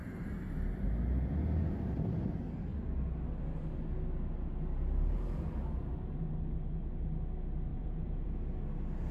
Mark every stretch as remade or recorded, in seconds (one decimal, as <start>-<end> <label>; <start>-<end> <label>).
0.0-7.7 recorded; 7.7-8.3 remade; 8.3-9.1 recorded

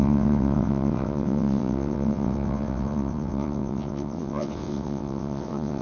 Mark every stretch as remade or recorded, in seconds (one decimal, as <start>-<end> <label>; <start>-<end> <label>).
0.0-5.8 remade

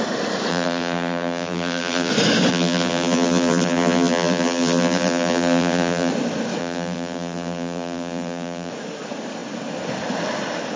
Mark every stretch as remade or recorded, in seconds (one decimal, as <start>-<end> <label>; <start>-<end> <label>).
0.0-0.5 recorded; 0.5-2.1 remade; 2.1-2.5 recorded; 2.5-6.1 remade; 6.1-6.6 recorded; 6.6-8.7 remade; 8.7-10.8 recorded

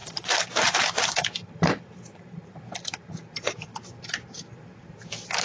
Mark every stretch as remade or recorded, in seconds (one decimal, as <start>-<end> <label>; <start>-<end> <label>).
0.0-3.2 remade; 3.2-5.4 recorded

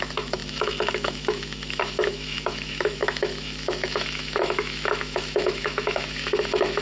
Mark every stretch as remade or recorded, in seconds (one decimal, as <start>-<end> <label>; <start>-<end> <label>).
0.0-6.8 remade

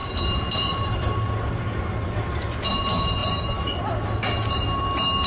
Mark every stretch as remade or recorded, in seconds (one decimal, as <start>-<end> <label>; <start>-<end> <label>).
0.0-1.2 remade; 1.2-5.3 recorded

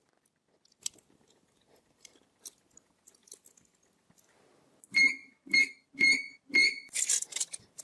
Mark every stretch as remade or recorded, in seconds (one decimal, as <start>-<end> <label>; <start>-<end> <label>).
0.0-7.8 recorded

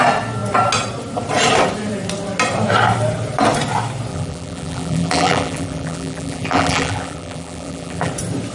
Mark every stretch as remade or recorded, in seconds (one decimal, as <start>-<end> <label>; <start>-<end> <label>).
0.0-4.1 recorded; 4.1-8.1 remade; 8.1-8.5 recorded